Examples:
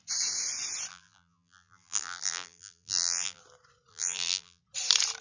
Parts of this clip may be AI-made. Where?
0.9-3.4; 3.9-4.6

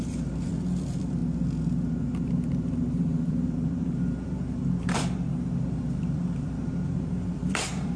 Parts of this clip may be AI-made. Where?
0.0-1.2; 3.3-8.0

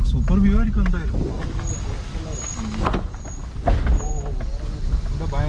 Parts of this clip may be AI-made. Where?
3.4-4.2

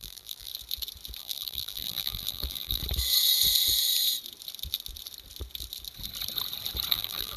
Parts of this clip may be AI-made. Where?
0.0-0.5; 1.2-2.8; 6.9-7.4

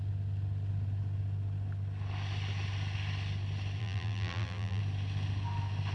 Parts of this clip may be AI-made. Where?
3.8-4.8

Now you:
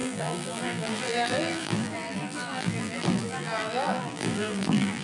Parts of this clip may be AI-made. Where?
0.0-5.0